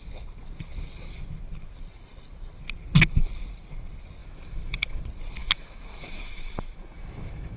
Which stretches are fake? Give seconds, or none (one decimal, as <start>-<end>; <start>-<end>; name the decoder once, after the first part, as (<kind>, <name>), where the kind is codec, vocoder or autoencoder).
4.2-5.0 (autoencoder, DAC-VAE); 5.4-7.6

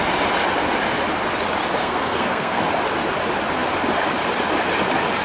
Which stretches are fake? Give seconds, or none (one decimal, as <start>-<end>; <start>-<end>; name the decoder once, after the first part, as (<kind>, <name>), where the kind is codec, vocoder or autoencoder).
1.8-2.6 (codec, SNAC)

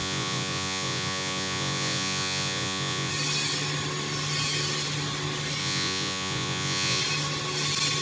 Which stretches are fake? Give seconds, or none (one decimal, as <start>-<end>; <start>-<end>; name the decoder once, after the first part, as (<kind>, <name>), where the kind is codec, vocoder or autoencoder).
0.0-3.1 (vocoder, Vocos); 5.6-7.0

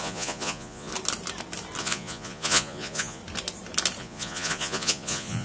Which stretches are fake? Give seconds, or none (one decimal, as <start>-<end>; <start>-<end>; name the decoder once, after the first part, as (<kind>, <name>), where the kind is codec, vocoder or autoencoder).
0.0-0.9 (vocoder, Vocos); 1.8-3.2; 4.0-5.4

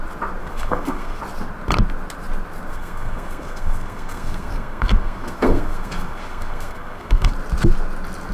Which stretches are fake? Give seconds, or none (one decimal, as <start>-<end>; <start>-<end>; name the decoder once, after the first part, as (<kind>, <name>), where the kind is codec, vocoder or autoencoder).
0.4-1.2 (codec, SNAC); 2.7-7.3